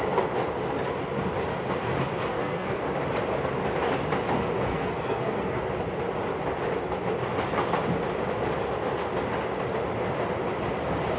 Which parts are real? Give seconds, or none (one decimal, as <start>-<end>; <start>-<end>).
0.0-2.3; 2.8-4.7; 5.6-11.2